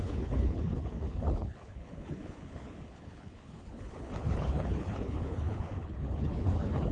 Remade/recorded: remade